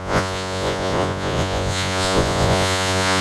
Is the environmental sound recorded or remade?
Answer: remade